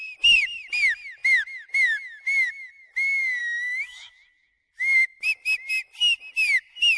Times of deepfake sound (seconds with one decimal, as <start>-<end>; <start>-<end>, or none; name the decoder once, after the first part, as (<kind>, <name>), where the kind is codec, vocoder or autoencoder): 3.4-4.1 (autoencoder, DAC-VAE)